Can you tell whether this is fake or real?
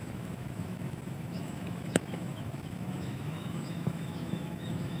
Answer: fake